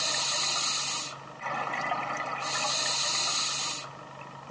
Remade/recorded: recorded